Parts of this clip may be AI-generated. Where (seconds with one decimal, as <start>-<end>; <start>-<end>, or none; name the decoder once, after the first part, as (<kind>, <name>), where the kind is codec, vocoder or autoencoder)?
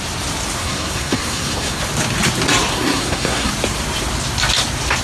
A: 0.6-1.8 (codec, SNAC); 2.7-3.5